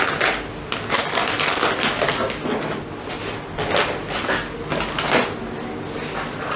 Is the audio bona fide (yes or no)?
yes